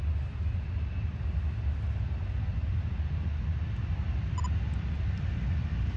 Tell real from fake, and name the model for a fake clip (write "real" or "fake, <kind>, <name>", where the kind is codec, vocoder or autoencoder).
real